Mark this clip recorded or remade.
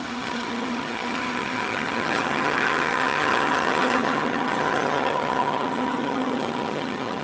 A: remade